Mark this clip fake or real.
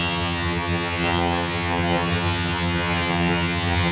fake